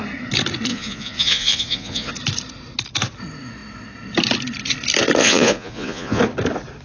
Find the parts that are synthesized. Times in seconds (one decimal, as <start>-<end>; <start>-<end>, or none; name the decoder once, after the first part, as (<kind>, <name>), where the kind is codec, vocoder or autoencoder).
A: 0.7-2.1 (vocoder, Vocos); 5.2-6.2